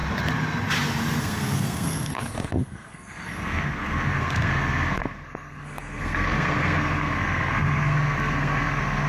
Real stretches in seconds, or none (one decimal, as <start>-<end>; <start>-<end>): 0.0-1.2